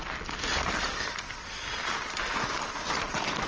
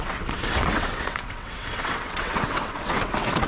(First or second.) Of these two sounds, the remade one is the second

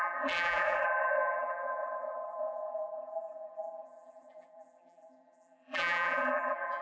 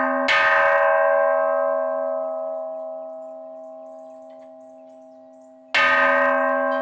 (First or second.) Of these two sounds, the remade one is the first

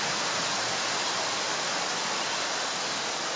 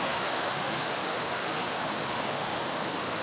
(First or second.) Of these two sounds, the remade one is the second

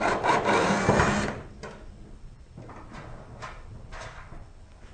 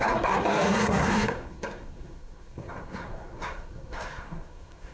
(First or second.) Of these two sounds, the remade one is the second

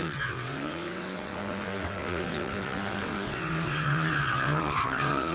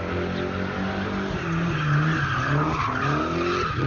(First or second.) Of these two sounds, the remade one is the first